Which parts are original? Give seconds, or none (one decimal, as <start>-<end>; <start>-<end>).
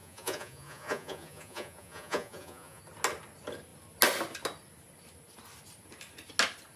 2.8-6.8